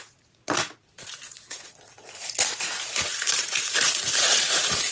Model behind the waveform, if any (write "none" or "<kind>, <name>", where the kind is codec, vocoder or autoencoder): vocoder, Vocos